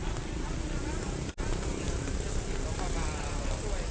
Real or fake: real